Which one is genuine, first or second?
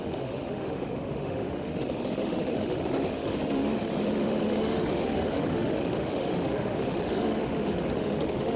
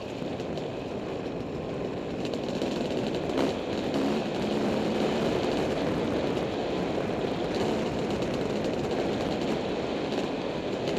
second